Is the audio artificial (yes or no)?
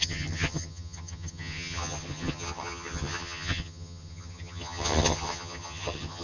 yes